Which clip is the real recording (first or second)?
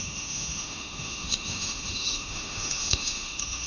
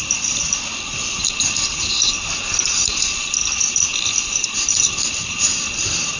second